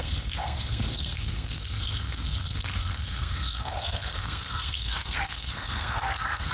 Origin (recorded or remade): remade